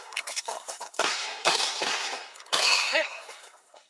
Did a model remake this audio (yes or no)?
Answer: yes